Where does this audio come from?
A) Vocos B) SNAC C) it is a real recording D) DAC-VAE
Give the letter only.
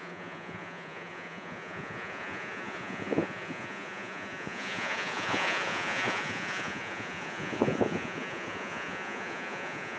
A